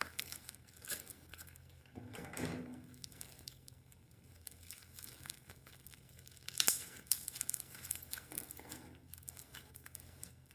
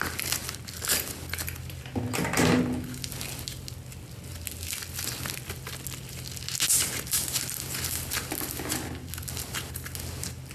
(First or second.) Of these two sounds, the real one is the second